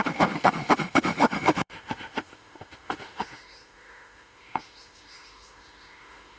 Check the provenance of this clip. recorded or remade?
remade